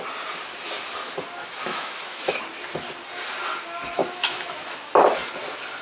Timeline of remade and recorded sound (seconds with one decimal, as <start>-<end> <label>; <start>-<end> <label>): 0.0-1.7 recorded; 1.7-2.3 remade; 2.3-4.0 recorded; 4.0-4.9 remade; 4.9-5.8 recorded